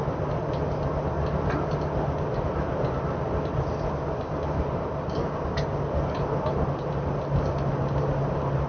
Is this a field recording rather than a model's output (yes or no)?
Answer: yes